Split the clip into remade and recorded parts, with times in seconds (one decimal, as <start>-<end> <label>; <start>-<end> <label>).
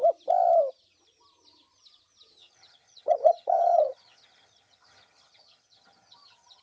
0.0-2.4 recorded; 2.4-6.6 remade